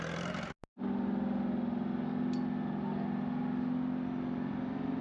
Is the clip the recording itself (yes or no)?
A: yes